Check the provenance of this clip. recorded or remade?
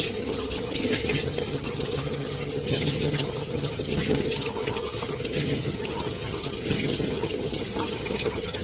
remade